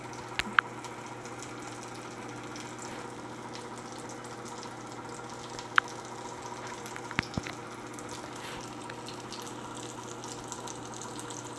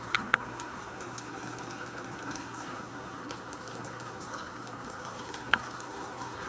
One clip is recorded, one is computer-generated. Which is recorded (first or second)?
first